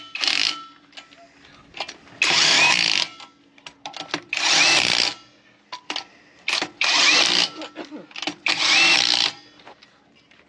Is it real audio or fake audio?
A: real